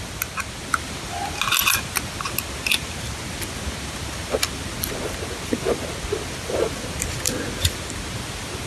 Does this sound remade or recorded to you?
recorded